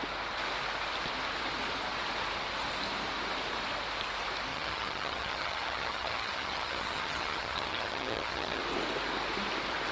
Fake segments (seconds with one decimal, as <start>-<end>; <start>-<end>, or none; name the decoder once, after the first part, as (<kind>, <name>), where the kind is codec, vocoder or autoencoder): 4.5-8.6 (vocoder, HiFi-GAN)